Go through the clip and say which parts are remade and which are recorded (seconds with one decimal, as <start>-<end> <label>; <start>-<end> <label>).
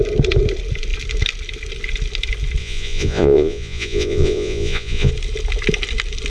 0.0-2.6 recorded; 2.6-5.1 remade; 5.1-6.3 recorded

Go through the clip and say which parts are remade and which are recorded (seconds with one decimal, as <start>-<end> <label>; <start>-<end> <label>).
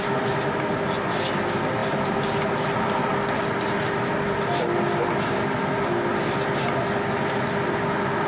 0.0-8.3 recorded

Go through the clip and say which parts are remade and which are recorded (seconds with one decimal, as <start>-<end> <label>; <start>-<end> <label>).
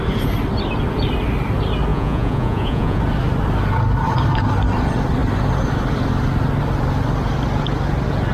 0.0-1.9 recorded; 1.9-3.0 remade; 3.0-8.3 recorded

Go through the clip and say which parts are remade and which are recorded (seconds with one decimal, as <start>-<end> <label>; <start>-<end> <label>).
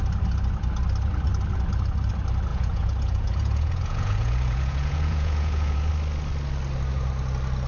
0.0-2.5 recorded; 2.5-5.9 remade; 5.9-7.7 recorded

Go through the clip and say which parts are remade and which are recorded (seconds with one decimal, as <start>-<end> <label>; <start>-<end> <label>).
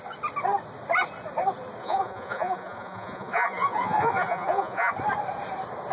0.0-1.8 recorded; 1.8-4.9 remade; 4.9-5.9 recorded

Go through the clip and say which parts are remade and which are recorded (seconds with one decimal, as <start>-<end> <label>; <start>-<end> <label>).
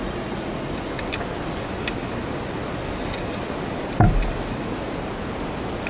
0.0-0.9 remade; 0.9-5.9 recorded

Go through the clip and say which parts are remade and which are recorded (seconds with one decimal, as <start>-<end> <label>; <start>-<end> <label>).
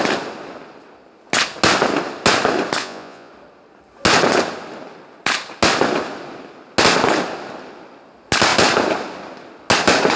0.0-2.8 recorded; 2.8-3.3 remade; 3.3-10.2 recorded